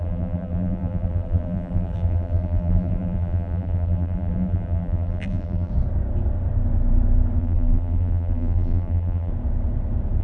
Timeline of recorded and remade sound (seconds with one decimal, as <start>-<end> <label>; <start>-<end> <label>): 0.0-5.7 remade; 5.7-7.4 recorded; 7.4-9.3 remade; 9.3-10.2 recorded